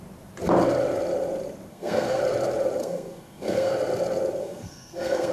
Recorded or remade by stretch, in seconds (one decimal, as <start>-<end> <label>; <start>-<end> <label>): 0.0-1.7 recorded; 1.7-2.2 remade; 2.2-2.8 recorded; 2.8-3.7 remade; 3.7-4.4 recorded; 4.4-5.3 remade